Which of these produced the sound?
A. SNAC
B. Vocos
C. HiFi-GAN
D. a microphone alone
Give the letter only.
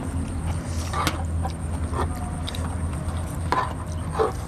D